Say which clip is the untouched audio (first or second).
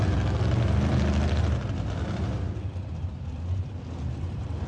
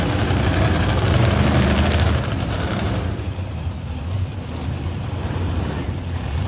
first